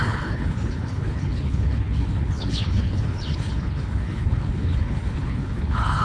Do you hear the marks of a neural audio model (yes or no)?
yes